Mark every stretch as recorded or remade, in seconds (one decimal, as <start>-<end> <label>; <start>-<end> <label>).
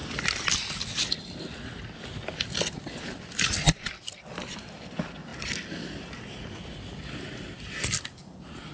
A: 0.0-8.7 recorded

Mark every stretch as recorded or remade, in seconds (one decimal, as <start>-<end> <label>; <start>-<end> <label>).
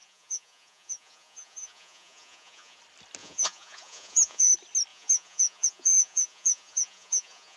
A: 0.0-2.8 remade; 2.8-3.2 recorded; 3.2-4.5 remade; 4.5-4.9 recorded; 4.9-7.6 remade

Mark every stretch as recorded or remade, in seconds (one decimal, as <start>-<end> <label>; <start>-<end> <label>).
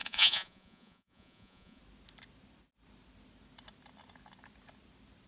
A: 0.0-1.8 remade; 1.8-5.3 recorded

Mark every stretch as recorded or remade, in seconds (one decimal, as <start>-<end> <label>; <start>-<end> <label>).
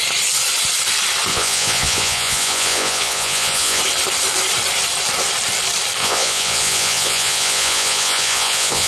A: 0.0-1.3 recorded; 1.3-3.8 remade; 3.8-6.0 recorded; 6.0-8.9 remade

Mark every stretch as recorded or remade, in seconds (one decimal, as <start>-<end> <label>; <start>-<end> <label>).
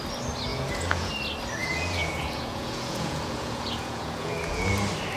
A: 0.0-0.5 recorded; 0.5-1.1 remade; 1.1-1.6 recorded; 1.6-4.7 remade; 4.7-5.2 recorded